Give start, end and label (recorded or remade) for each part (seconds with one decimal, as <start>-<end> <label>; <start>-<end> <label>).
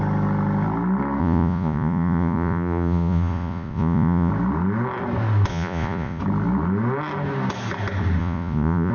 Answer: 0.0-1.2 recorded; 1.2-4.3 remade; 4.3-5.5 recorded; 5.5-6.2 remade; 6.2-8.2 recorded; 8.2-8.9 remade